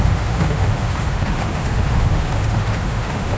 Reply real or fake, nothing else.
fake